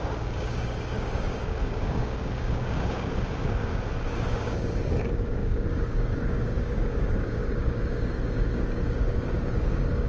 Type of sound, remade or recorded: remade